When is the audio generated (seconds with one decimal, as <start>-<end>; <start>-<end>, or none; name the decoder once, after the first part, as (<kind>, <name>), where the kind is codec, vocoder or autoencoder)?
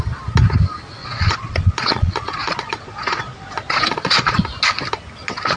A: 1.0-4.4 (vocoder, Vocos)